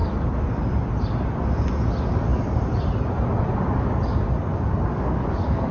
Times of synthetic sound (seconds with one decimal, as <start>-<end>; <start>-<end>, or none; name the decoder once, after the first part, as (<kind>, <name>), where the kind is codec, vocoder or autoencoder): 4.5-5.7 (codec, DAC)